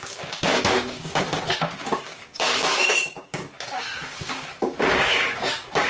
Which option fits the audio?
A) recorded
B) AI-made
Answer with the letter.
B